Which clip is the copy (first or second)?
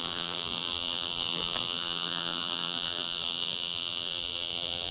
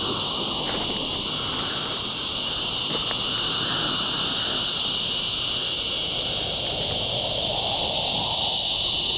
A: first